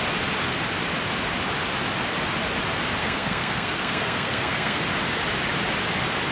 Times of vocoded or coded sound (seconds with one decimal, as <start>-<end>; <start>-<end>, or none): 3.0-4.8